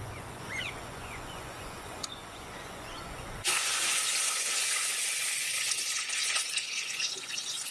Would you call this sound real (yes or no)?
no